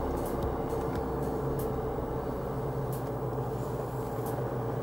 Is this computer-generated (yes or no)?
no